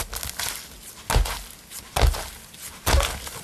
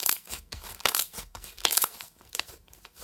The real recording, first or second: first